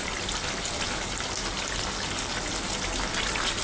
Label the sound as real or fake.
real